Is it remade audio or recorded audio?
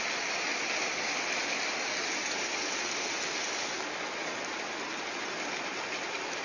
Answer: recorded